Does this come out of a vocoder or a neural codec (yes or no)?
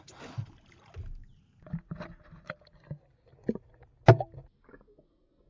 no